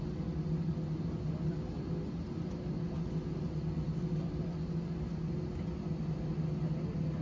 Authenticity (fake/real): real